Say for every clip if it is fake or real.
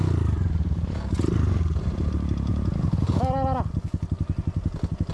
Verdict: real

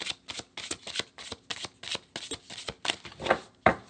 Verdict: real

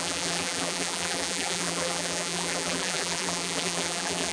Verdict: fake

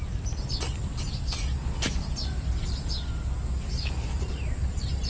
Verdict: real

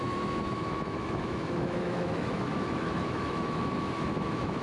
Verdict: fake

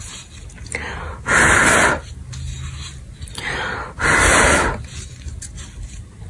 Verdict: real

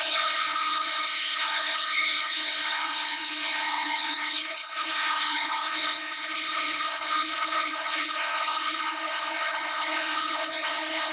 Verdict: fake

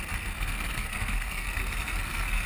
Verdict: fake